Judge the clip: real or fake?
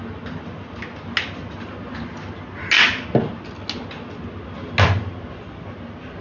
real